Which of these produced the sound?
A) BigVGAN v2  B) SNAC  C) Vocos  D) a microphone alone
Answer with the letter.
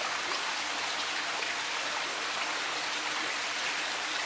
D